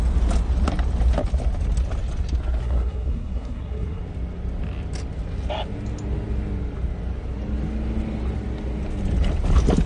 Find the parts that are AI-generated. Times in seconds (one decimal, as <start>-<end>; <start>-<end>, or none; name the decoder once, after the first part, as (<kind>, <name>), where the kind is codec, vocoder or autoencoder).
2.6-4.0 (codec, SNAC)